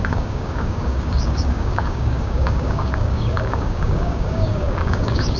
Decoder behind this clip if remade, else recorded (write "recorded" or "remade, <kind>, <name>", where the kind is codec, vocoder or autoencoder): remade, codec, DAC